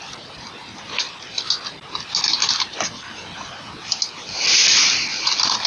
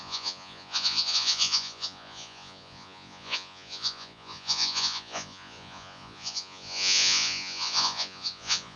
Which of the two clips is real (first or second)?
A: first